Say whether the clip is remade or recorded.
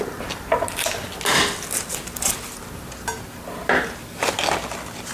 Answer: recorded